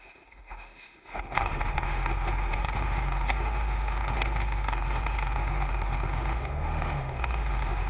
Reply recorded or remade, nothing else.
remade